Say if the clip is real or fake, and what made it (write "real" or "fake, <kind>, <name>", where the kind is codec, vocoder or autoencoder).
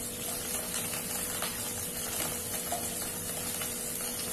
real